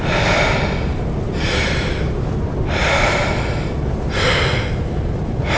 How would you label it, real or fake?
real